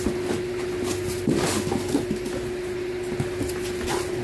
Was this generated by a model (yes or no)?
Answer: no